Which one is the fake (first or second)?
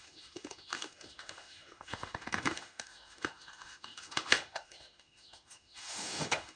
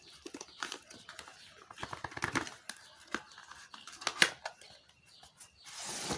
first